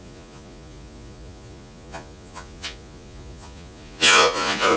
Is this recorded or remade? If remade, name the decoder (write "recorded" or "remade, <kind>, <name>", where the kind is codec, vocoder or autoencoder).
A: remade, vocoder, Vocos